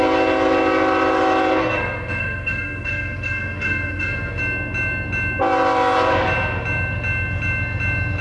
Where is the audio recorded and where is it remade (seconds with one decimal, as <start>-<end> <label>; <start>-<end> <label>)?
0.0-1.6 recorded; 1.6-4.4 remade; 4.4-8.2 recorded